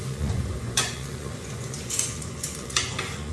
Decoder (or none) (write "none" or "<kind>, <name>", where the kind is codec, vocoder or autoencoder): vocoder, Vocos